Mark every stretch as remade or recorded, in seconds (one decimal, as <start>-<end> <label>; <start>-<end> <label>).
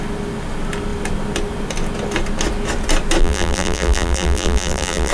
0.0-3.2 recorded; 3.2-5.1 remade